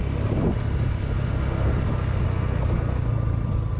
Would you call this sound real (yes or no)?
yes